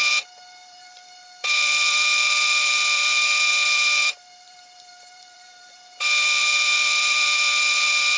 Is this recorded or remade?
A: remade